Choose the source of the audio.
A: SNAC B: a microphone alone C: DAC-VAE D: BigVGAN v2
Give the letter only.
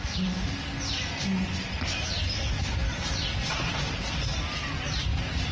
B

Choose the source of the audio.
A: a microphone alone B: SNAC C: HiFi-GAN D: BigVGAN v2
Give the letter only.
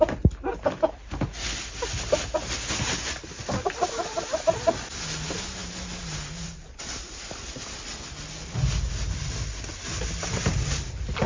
A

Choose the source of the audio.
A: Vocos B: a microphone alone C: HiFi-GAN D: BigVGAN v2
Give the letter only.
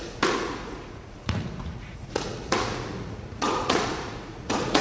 A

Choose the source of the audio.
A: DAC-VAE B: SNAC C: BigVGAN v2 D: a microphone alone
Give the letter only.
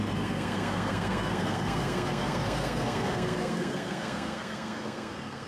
B